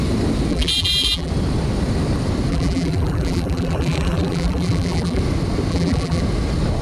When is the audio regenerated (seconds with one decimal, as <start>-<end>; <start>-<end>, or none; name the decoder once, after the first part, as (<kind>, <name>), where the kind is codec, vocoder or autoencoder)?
0.5-1.3 (vocoder, BigVGAN v2); 2.5-5.2; 5.7-6.2